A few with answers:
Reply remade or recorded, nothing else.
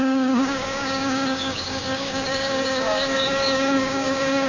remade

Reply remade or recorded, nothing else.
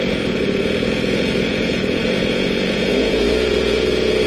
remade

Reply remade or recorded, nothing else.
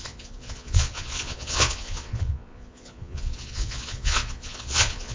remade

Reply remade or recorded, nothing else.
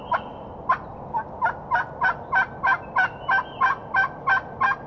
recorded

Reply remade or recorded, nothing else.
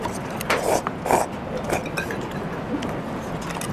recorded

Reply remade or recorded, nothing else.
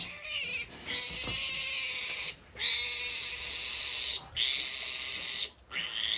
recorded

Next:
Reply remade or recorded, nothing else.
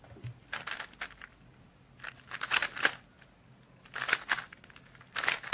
recorded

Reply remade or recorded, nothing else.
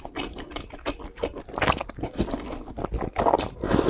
recorded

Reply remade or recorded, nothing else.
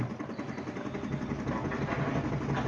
recorded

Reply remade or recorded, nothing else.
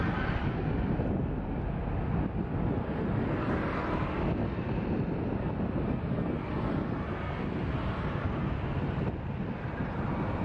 recorded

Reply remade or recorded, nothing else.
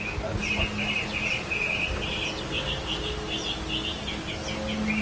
recorded